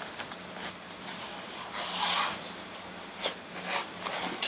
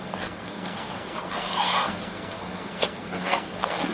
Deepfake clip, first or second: second